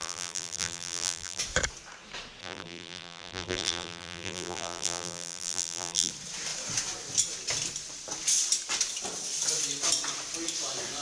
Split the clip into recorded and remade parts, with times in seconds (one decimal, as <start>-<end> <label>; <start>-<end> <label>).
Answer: 0.0-1.4 remade; 1.4-2.4 recorded; 2.4-6.1 remade; 6.1-11.0 recorded